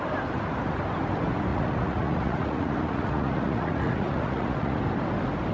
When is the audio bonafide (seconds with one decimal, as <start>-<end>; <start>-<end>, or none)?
0.0-1.5; 4.8-5.5